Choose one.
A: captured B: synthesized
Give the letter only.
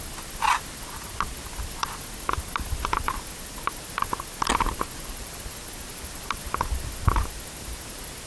A